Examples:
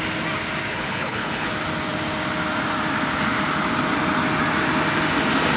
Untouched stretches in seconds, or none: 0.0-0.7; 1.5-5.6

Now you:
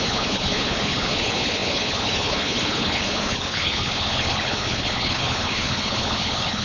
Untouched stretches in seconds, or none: none

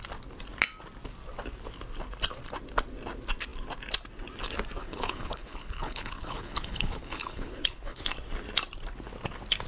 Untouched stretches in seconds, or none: 0.0-4.8; 8.0-9.7

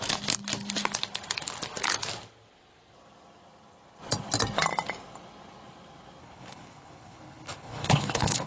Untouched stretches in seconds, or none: 0.0-6.2

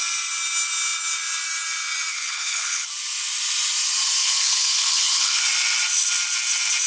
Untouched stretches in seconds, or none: 0.0-2.1; 2.9-4.2; 5.4-6.9

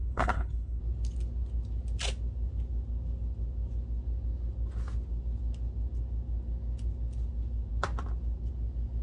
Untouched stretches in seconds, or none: 0.8-9.0

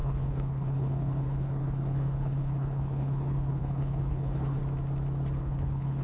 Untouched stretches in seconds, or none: 4.6-5.4

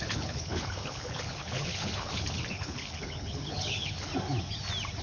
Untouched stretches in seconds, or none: 4.1-5.0